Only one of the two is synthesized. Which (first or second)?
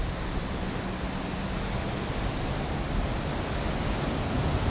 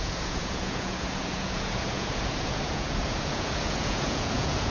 second